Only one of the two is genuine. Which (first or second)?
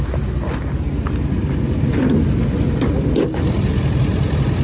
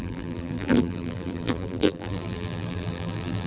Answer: first